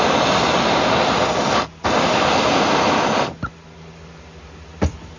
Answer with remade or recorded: recorded